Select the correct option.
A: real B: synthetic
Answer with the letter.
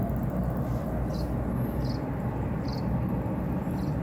A